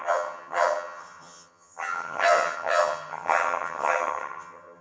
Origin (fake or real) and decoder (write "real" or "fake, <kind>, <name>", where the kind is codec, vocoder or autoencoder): fake, vocoder, HiFi-GAN